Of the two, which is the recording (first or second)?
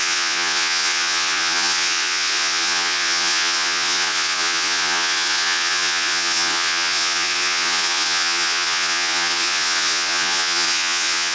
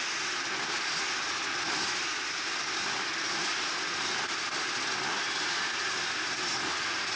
second